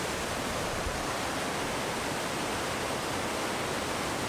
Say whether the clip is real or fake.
real